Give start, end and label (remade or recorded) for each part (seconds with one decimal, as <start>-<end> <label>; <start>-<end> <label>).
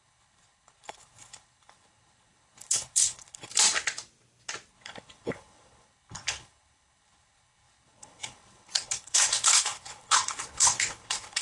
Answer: 0.0-3.5 remade; 3.5-4.7 recorded; 4.7-11.4 remade